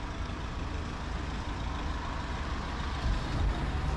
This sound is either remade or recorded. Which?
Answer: recorded